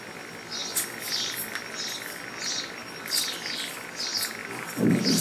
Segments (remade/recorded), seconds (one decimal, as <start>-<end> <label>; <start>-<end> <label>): 0.0-4.4 recorded; 4.4-5.2 remade